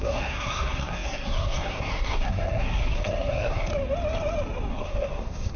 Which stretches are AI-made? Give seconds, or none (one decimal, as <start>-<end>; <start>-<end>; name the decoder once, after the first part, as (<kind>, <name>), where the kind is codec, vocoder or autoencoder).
0.0-3.7 (codec, SNAC); 4.7-5.6